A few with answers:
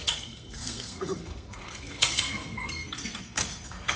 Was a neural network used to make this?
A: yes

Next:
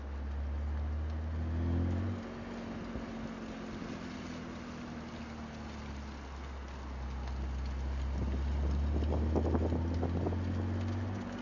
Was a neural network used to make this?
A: no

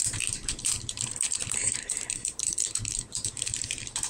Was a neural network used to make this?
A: yes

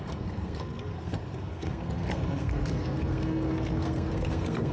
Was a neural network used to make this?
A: yes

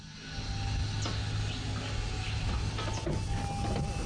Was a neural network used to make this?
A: no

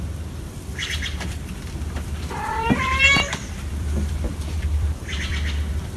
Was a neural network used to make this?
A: yes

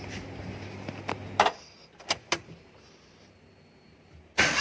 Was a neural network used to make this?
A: no